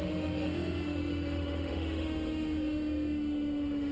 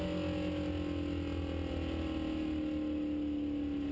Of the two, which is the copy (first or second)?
first